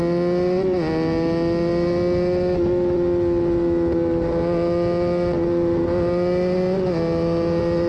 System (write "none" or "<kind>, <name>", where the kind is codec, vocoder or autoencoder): none